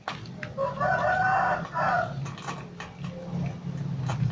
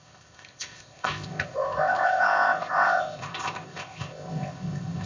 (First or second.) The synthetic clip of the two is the second